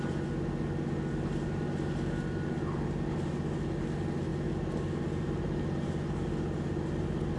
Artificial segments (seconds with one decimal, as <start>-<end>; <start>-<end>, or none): none